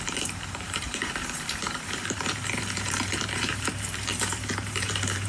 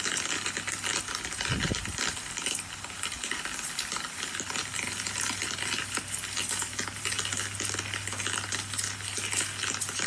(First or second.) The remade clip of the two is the first